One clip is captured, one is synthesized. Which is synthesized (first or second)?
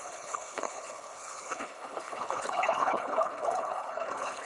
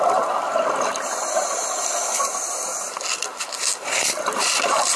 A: first